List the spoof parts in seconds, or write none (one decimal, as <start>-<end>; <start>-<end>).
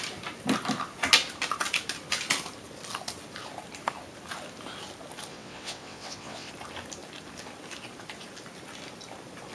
5.3-6.5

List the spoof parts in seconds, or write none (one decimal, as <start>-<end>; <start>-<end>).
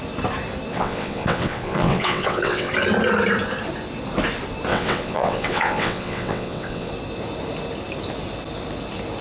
0.7-2.7; 4.7-6.9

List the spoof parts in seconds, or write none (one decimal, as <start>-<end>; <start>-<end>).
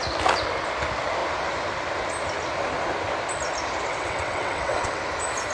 3.9-5.0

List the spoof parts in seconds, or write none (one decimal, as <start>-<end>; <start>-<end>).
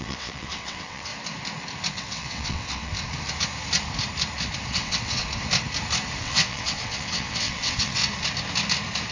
0.0-1.1; 1.9-2.9; 4.7-5.2; 6.2-8.0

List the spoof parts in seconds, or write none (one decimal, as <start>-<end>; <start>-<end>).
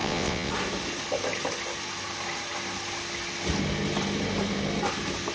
0.0-0.5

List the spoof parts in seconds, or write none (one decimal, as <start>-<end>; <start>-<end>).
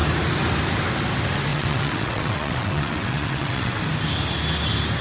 1.5-3.8